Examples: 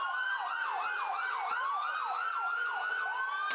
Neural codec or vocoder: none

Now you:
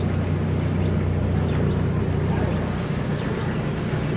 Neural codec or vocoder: none